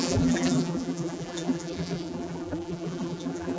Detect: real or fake fake